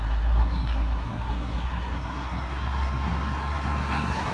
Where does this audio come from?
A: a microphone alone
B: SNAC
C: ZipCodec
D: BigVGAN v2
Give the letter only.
B